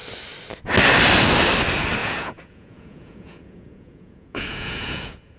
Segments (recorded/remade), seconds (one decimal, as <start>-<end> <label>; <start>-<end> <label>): 0.0-2.0 recorded; 2.0-5.4 remade